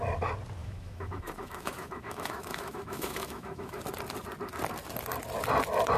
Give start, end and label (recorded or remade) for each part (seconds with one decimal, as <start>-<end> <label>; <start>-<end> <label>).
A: 0.0-0.6 recorded; 0.6-3.8 remade; 3.8-6.0 recorded